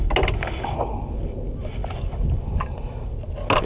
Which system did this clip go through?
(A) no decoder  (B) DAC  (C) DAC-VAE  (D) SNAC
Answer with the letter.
A